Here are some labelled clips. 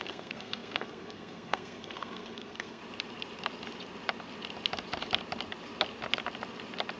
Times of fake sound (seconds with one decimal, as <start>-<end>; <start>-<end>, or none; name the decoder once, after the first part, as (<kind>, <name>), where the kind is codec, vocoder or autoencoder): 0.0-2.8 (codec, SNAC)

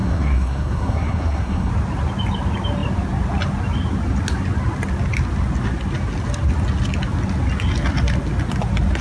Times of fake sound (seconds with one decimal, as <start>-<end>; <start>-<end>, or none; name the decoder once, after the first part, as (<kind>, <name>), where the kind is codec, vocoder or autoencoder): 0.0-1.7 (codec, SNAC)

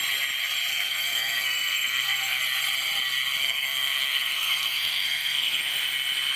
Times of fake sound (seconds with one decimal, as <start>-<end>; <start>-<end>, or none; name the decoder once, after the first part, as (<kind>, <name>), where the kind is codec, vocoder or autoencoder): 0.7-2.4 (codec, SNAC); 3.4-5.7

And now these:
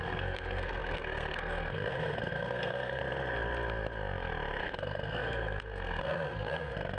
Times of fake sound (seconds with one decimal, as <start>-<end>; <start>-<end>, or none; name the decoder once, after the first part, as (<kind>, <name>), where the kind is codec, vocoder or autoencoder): 0.0-3.0 (codec, SNAC); 4.6-7.0

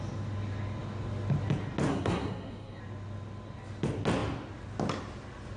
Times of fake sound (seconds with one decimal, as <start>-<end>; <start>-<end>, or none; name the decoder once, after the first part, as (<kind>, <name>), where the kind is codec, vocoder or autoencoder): 1.9-2.8 (codec, SNAC)

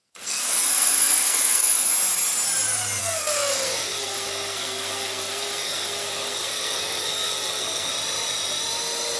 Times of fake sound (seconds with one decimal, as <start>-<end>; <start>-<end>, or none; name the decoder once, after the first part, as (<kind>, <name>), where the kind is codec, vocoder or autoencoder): 0.0-1.9 (codec, SNAC); 3.0-7.9

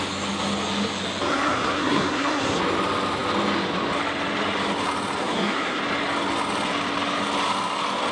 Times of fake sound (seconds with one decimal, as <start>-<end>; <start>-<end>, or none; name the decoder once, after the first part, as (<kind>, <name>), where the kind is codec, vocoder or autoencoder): 1.3-2.6 (codec, SNAC); 5.2-5.8

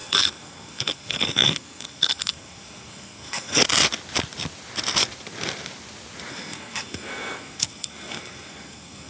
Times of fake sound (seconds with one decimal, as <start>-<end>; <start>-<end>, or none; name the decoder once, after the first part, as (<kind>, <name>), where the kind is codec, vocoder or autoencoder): 0.0-3.6 (codec, SNAC); 6.3-9.1